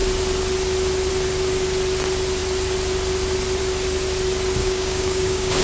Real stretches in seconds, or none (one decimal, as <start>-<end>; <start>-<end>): 0.0-4.6